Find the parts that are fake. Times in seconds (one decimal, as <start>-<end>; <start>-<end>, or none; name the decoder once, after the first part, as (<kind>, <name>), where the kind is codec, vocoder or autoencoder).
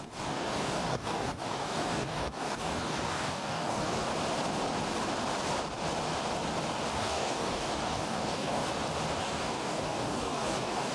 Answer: 0.0-4.1 (codec, DAC); 6.9-8.6; 9.2-10.9